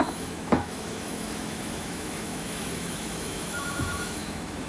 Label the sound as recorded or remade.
remade